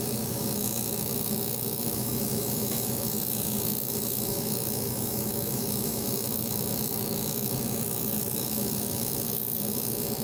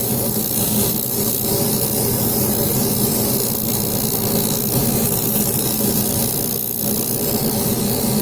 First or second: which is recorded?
second